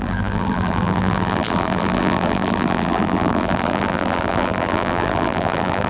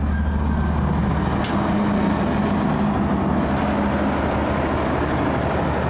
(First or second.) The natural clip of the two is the second